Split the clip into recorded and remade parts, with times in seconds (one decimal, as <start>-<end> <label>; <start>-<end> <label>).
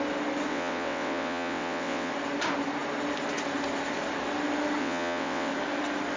0.0-0.5 recorded; 0.5-2.1 remade; 2.1-4.8 recorded; 4.8-5.5 remade; 5.5-6.2 recorded